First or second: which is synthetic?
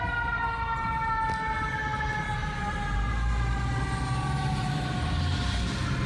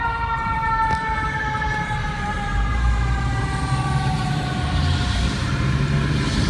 second